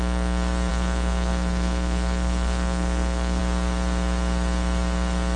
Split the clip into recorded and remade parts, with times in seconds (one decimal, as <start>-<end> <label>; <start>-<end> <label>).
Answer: 0.0-0.7 recorded; 0.7-3.4 remade; 3.4-5.4 recorded